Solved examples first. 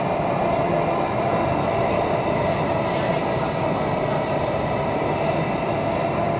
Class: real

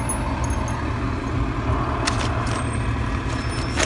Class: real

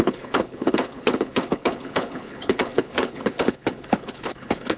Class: fake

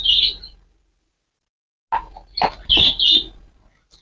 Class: real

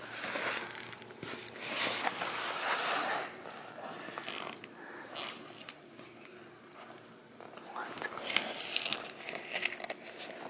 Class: real